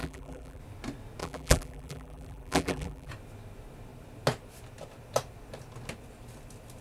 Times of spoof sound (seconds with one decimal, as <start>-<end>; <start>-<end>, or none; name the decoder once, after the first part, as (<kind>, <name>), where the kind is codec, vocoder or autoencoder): 0.0-0.6 (vocoder, BigVGAN v2); 1.2-3.1